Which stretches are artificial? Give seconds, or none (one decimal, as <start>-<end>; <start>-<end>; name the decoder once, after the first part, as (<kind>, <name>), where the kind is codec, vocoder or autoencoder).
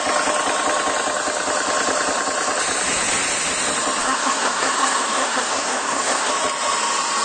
4.0-6.3 (codec, SNAC)